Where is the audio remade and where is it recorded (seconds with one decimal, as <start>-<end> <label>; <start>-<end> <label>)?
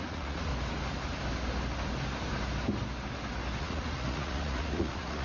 0.0-0.5 remade; 0.5-3.6 recorded; 3.6-5.2 remade